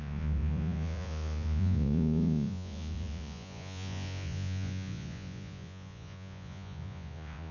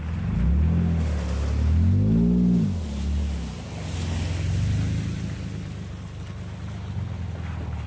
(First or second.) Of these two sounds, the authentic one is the second